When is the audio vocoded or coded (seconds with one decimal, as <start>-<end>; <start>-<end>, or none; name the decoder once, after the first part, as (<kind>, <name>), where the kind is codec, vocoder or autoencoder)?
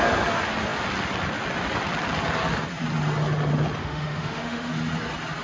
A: 3.8-4.7 (autoencoder, DAC-VAE)